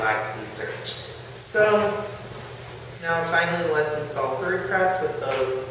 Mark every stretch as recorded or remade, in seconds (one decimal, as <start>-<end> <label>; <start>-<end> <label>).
0.0-5.7 recorded